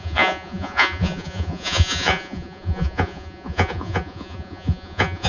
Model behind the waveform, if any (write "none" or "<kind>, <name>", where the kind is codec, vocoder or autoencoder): vocoder, Vocos